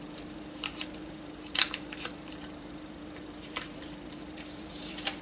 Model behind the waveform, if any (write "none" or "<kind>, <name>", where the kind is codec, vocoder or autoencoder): vocoder, BigVGAN v2